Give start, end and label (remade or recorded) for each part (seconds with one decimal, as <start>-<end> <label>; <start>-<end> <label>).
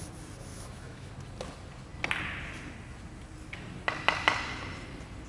0.0-0.5 recorded; 0.5-1.1 remade; 1.1-5.3 recorded